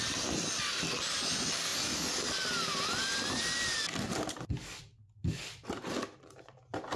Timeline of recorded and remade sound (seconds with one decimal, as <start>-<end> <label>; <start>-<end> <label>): 0.0-7.0 recorded